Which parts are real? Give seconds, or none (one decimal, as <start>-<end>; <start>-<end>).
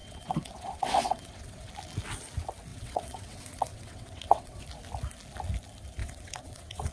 1.7-2.7; 4.6-6.0